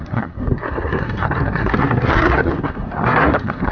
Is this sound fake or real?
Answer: fake